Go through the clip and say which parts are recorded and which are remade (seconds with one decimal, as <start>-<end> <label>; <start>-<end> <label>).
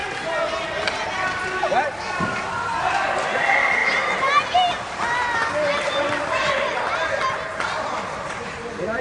0.0-9.0 recorded